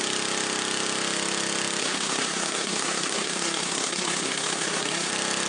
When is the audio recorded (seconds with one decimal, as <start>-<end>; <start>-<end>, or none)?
0.0-1.8; 5.1-5.5